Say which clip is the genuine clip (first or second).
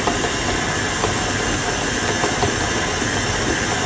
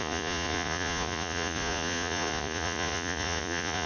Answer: first